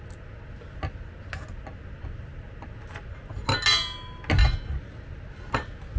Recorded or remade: recorded